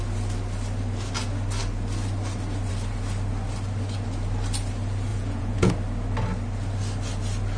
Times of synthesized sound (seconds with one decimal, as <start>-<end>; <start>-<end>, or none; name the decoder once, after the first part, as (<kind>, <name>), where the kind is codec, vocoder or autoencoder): 5.1-5.7 (vocoder, Vocos)